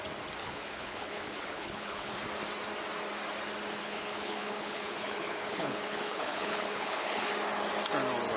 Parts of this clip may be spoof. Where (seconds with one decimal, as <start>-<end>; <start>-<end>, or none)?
0.4-2.1; 3.8-7.3